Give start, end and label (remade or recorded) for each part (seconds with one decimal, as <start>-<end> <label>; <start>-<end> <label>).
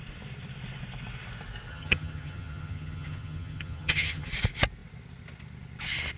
0.0-1.7 recorded; 1.7-4.3 remade; 4.3-6.2 recorded